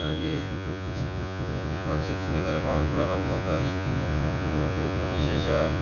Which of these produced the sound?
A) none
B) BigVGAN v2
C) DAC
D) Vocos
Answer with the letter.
D